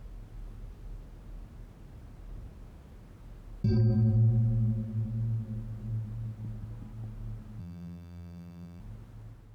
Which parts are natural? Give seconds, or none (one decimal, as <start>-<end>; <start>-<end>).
0.0-7.6; 8.8-9.5